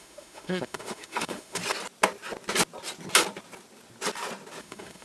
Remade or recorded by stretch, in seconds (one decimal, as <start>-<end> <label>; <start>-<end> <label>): 0.0-1.6 remade; 1.6-4.6 recorded; 4.6-5.0 remade